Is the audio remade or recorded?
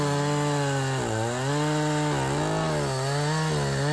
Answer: recorded